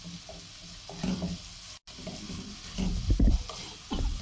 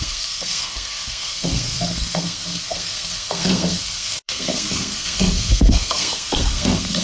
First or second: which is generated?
second